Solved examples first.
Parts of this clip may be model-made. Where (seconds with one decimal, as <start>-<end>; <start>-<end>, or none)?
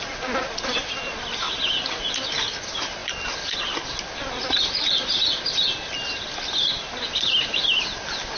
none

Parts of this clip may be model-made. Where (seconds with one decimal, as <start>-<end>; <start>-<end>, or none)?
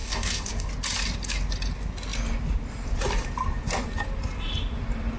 0.0-0.7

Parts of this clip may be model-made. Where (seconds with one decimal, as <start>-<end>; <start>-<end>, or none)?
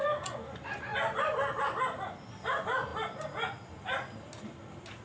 none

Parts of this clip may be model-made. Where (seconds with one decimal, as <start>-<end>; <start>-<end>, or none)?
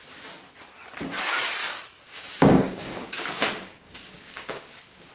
1.6-5.1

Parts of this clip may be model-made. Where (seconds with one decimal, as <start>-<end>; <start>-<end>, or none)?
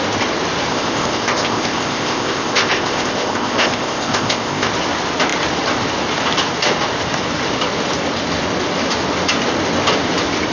0.7-4.7